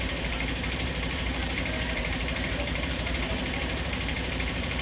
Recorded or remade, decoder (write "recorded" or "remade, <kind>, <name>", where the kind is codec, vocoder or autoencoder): remade, vocoder, BigVGAN v2